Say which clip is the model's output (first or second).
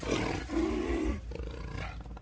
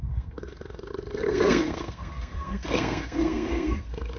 second